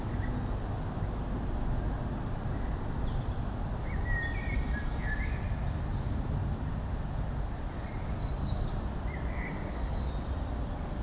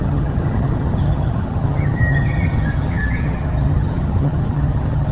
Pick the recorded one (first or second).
first